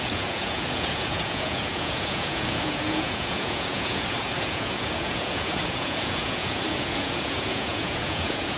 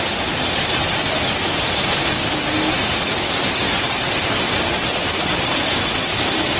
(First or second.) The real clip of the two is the second